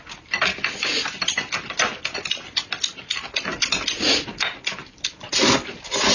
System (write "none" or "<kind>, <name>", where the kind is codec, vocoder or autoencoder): none